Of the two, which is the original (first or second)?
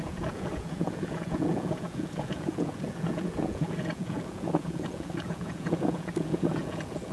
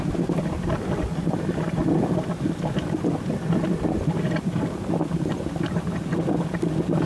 second